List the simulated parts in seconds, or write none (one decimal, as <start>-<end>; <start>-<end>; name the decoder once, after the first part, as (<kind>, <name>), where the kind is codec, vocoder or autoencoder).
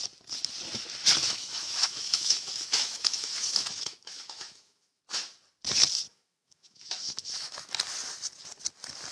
1.2-5.0 (autoencoder, DAC-VAE); 6.1-7.7